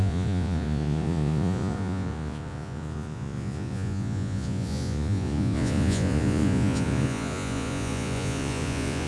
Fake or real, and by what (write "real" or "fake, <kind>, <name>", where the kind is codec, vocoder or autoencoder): fake, vocoder, Vocos